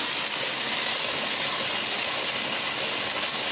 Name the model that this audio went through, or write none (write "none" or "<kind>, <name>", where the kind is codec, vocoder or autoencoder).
none